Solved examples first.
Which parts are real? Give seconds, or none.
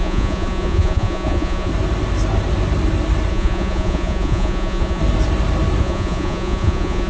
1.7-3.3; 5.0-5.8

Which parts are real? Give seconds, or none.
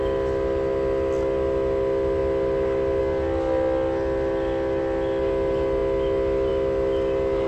0.0-7.5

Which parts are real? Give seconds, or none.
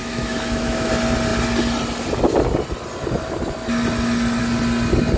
0.9-5.2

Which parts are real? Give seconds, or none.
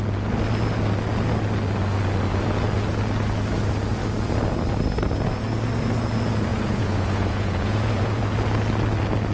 0.0-6.5; 8.2-9.3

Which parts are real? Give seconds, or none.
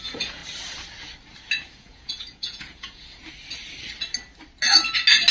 0.4-1.7; 3.2-5.3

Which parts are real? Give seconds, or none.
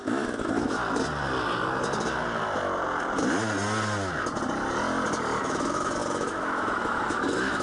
0.8-5.4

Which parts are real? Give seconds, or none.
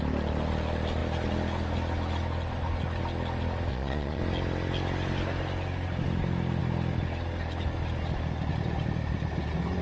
0.0-3.7; 4.2-9.8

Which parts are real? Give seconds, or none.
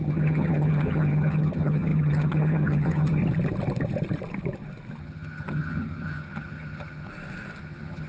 3.2-5.0; 7.1-7.6